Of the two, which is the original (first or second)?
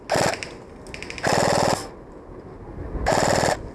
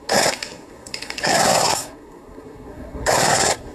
first